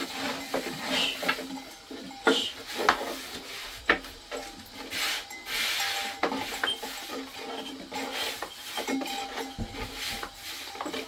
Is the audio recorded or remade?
recorded